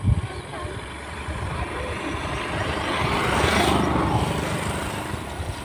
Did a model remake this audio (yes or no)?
no